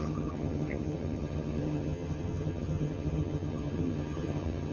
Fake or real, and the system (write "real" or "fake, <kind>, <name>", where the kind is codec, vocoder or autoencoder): fake, vocoder, HiFi-GAN